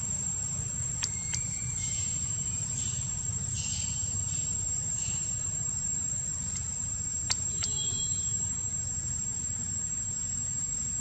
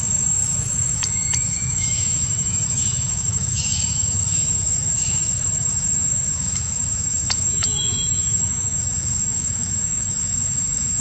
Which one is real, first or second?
first